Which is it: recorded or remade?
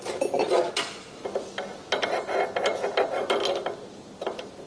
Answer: recorded